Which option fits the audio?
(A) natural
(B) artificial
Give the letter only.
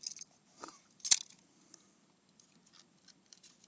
A